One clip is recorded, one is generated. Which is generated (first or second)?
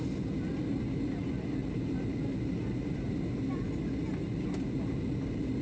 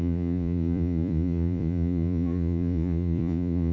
second